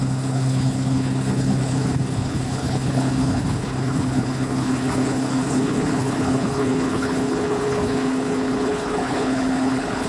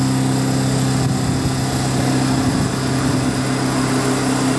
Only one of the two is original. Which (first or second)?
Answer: second